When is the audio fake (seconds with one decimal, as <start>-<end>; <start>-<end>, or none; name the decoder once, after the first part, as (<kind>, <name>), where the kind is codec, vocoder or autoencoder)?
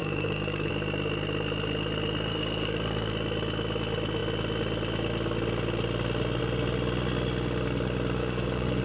0.0-0.7 (codec, DAC); 2.3-3.1; 8.2-8.8